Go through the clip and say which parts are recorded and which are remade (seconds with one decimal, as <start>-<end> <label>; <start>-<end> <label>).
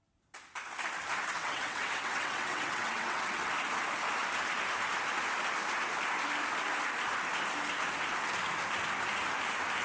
0.0-1.4 recorded; 1.4-3.5 remade; 3.5-9.8 recorded